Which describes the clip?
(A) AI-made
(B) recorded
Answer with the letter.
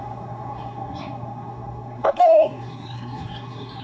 A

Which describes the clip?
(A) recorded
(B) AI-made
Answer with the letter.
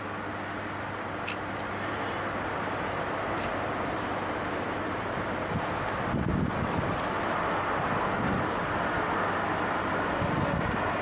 A